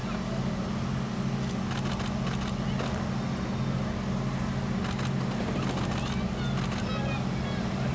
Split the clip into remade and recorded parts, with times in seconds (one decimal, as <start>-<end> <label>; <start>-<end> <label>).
0.0-7.9 recorded

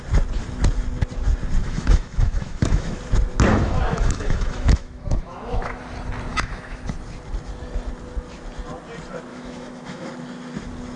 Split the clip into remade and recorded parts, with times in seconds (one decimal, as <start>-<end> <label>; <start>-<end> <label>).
0.0-1.6 recorded; 1.6-3.0 remade; 3.0-3.5 recorded; 3.5-5.8 remade; 5.8-6.3 recorded; 6.3-6.8 remade; 6.8-9.3 recorded; 9.3-10.1 remade; 10.1-11.0 recorded

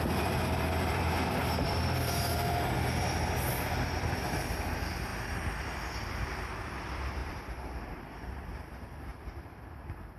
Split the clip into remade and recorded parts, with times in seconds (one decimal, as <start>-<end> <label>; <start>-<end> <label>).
0.0-2.3 remade; 2.3-3.5 recorded; 3.5-5.1 remade; 5.1-6.1 recorded; 6.1-9.1 remade; 9.1-10.2 recorded

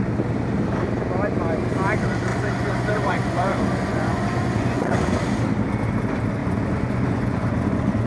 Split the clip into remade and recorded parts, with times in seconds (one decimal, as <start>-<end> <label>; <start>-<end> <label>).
0.0-2.3 recorded; 2.3-5.2 remade; 5.2-6.4 recorded; 6.4-8.1 remade